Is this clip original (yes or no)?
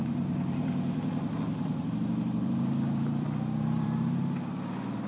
no